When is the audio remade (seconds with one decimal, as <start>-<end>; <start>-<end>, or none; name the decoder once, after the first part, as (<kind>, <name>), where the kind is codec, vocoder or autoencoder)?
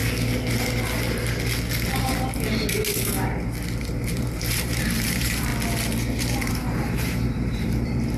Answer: 3.8-5.5 (vocoder, BigVGAN v2); 6.5-8.2